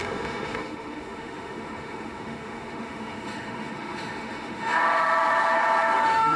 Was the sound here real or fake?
fake